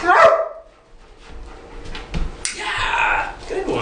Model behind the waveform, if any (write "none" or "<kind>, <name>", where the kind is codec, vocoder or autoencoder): none